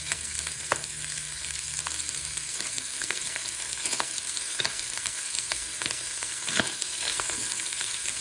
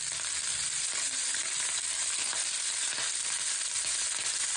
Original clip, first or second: second